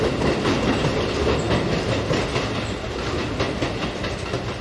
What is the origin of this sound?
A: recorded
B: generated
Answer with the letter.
A